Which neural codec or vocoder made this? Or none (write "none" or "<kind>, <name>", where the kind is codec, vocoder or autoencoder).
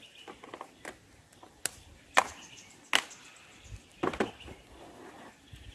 none